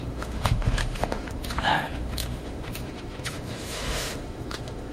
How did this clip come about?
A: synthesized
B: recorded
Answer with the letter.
A